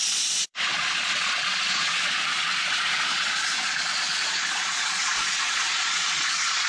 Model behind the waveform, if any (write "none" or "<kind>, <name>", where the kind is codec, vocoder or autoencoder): vocoder, Vocos